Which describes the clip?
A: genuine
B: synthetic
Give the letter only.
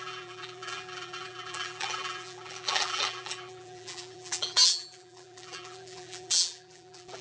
B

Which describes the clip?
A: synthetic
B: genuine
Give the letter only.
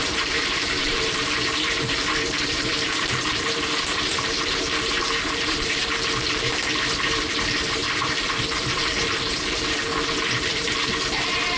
A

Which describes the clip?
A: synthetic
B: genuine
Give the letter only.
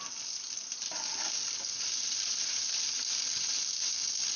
B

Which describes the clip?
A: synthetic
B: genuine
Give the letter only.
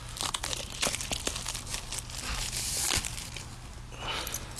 B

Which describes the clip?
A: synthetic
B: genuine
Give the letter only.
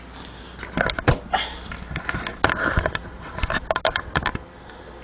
B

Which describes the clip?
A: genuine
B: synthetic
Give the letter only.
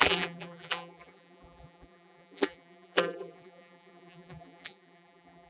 B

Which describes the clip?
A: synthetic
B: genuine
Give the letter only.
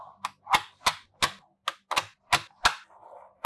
B